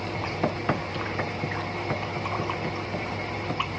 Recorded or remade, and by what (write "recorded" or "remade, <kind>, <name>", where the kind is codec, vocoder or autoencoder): recorded